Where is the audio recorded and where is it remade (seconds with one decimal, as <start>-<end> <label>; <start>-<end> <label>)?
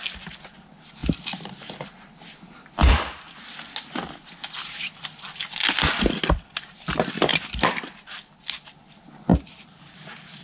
0.0-7.3 recorded; 7.3-7.8 remade; 7.8-9.3 recorded; 9.3-10.4 remade